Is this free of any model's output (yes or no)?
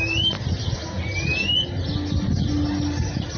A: yes